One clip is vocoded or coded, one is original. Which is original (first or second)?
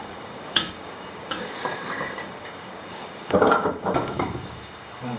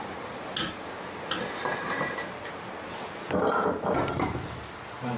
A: second